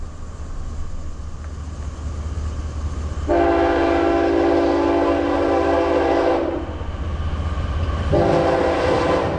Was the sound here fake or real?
real